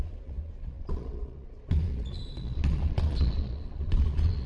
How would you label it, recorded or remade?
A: remade